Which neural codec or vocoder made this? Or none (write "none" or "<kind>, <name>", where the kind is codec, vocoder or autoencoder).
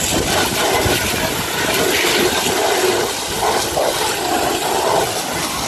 none